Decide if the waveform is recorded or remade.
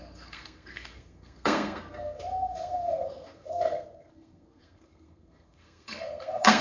remade